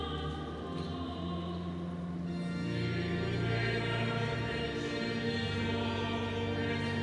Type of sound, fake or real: real